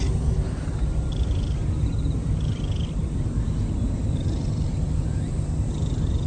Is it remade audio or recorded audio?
recorded